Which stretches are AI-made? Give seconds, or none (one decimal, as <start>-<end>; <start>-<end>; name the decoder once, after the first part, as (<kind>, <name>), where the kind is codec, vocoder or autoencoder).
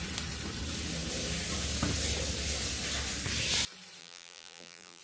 4.0-5.0 (vocoder, BigVGAN v2)